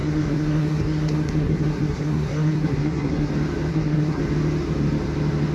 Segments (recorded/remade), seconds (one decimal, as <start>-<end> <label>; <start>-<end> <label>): 0.0-3.3 remade; 3.3-3.7 recorded; 3.7-4.2 remade; 4.2-5.5 recorded